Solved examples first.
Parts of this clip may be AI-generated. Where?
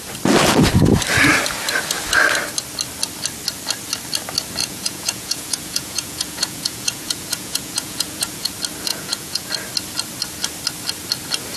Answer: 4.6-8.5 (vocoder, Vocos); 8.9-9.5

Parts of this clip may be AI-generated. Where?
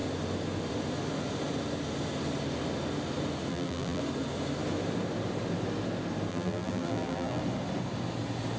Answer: 3.5-4.0 (vocoder, BigVGAN v2); 6.3-7.4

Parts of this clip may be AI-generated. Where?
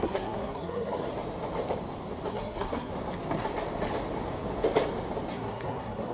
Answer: 0.0-1.1 (codec, SNAC); 2.3-2.9; 5.3-6.1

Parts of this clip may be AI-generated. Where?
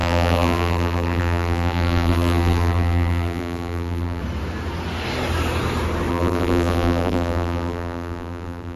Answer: 0.0-4.2 (vocoder, BigVGAN v2); 6.1-8.8